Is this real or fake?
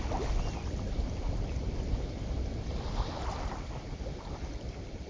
real